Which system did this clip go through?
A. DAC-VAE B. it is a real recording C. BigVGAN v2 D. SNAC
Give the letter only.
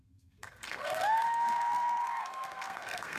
D